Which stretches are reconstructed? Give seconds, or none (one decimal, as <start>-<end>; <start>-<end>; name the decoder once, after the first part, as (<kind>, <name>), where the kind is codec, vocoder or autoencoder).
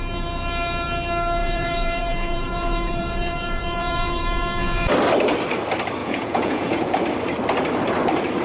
1.4-4.9 (vocoder, Vocos); 6.0-7.0